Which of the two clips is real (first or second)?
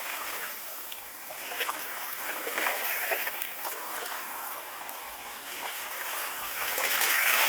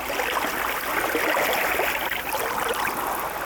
second